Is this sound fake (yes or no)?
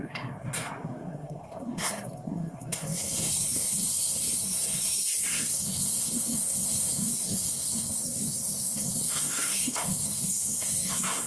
yes